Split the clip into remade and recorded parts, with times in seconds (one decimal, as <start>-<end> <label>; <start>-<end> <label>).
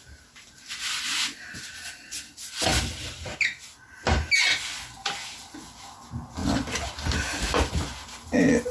0.0-8.7 recorded